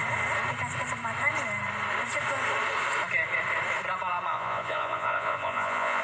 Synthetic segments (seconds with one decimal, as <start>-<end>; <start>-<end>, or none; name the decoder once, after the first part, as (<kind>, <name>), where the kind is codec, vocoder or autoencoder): 4.3-6.0 (vocoder, Vocos)